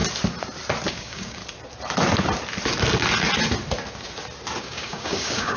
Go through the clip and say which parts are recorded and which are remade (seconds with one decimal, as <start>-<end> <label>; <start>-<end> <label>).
0.0-0.9 recorded; 0.9-1.4 remade; 1.4-4.6 recorded; 4.6-5.6 remade